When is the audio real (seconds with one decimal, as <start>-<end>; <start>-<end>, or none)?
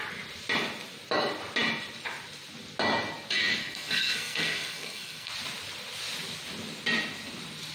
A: 0.0-3.6; 5.3-7.7